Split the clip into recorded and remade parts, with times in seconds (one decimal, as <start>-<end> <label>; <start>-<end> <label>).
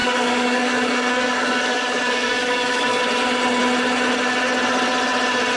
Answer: 0.0-3.0 remade; 3.0-5.6 recorded